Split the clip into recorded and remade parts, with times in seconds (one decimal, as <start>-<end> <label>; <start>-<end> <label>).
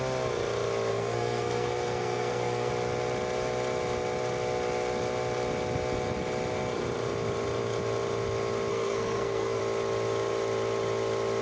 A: 0.0-0.9 recorded; 0.9-2.7 remade; 2.7-8.7 recorded; 8.7-9.6 remade; 9.6-11.4 recorded